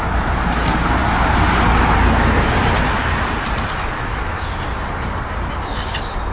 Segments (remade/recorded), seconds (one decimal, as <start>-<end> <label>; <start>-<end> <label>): 0.0-6.3 recorded